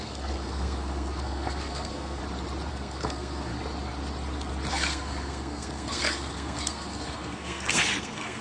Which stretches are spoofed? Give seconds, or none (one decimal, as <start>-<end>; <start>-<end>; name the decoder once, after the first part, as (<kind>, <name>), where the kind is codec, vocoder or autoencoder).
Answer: 0.0-2.2 (codec, SNAC); 2.7-3.5; 4.7-8.4